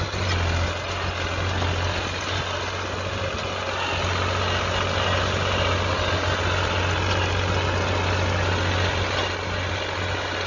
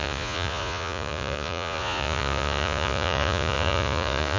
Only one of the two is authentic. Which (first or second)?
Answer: first